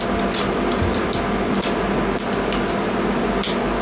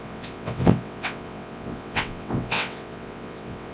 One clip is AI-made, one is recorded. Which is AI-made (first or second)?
second